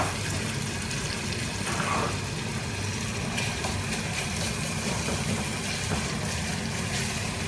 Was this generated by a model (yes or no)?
no